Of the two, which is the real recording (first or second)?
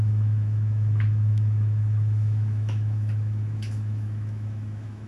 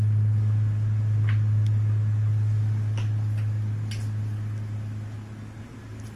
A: second